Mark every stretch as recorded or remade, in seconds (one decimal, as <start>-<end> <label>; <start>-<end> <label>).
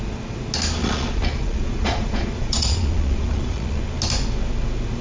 0.0-0.8 recorded; 0.8-3.8 remade; 3.8-5.0 recorded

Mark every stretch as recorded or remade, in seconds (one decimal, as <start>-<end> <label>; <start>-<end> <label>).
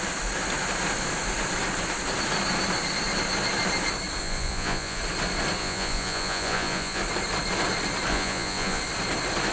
0.0-4.2 recorded; 4.2-5.0 remade; 5.0-5.6 recorded; 5.6-7.0 remade; 7.0-8.1 recorded; 8.1-8.8 remade; 8.8-9.5 recorded